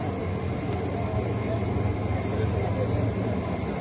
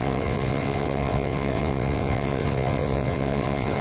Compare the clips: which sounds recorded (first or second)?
first